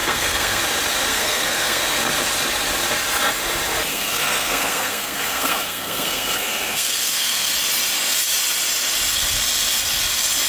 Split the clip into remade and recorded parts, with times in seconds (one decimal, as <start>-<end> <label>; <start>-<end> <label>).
0.0-0.6 remade; 0.6-1.1 recorded; 1.1-1.8 remade; 1.8-3.9 recorded; 3.9-7.5 remade; 7.5-10.5 recorded